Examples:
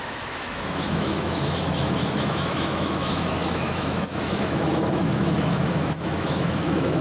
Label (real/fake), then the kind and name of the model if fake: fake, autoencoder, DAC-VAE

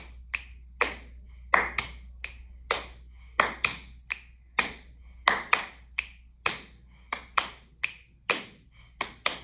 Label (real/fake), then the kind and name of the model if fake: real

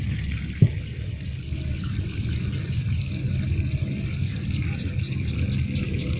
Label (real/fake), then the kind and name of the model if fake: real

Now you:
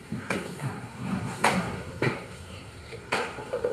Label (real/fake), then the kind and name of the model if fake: fake, codec, SNAC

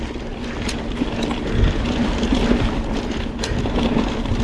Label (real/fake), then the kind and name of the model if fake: real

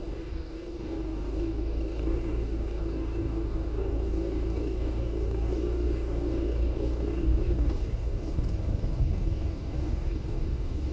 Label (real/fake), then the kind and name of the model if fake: fake, codec, DAC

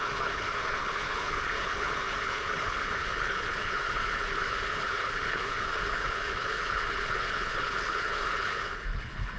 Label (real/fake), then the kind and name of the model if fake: fake, codec, HILCodec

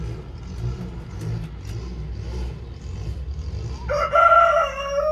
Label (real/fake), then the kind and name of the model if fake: real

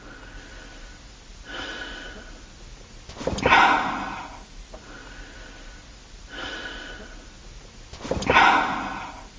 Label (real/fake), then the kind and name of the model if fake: real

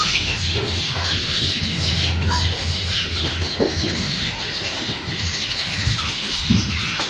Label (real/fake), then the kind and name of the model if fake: fake, autoencoder, DAC-VAE